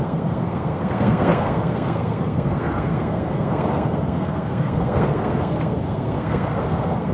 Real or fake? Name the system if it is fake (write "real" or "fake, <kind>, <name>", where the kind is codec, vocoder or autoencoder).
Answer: fake, codec, SNAC